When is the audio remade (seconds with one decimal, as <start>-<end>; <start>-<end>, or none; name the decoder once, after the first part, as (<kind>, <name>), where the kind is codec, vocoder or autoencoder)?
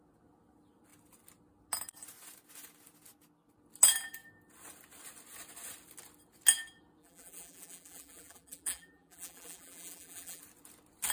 7.0-10.4 (vocoder, BigVGAN v2)